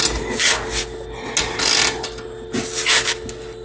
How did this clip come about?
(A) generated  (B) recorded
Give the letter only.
B